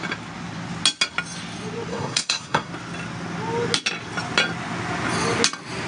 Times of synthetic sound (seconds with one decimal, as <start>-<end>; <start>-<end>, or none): 1.9-2.7